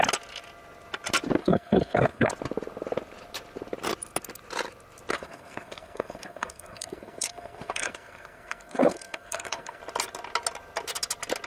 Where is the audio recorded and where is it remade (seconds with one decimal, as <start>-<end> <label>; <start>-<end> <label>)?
0.0-1.4 recorded; 1.4-2.3 remade; 2.3-5.1 recorded; 5.1-9.8 remade; 9.8-11.5 recorded